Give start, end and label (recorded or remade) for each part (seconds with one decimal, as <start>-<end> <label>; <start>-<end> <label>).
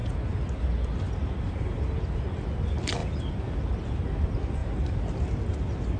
0.0-6.0 recorded